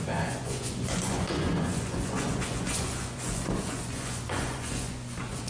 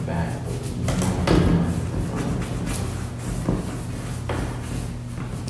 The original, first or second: second